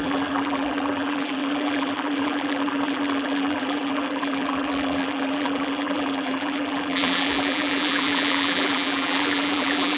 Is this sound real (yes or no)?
no